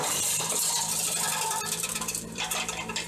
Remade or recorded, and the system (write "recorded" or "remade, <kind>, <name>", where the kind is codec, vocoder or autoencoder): remade, vocoder, BigVGAN v2